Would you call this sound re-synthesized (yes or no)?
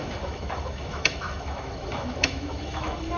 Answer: yes